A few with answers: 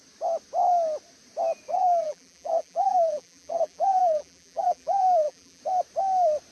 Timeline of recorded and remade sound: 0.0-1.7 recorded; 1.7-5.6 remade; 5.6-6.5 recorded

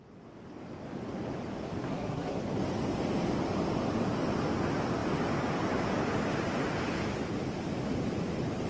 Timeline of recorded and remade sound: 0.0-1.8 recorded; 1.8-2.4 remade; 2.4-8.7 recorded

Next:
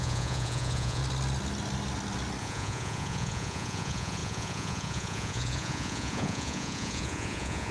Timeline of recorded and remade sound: 0.0-1.0 remade; 1.0-2.4 recorded; 2.4-7.7 remade